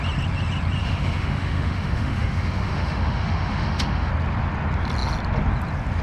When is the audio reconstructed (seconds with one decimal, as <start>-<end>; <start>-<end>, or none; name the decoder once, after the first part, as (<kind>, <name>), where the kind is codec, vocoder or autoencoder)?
0.8-4.1 (autoencoder, DAC-VAE)